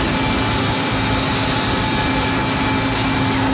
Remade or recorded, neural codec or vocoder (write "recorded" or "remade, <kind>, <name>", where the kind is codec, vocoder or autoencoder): recorded